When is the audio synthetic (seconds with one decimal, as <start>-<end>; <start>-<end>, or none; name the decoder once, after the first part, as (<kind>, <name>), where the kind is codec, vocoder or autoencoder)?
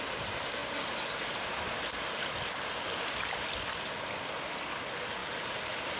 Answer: 5.2-6.0 (vocoder, BigVGAN v2)